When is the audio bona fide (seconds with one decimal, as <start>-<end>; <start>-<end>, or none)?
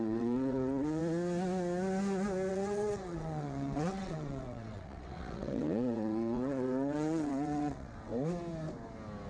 1.0-2.5; 8.1-9.3